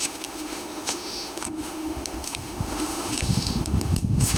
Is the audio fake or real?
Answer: fake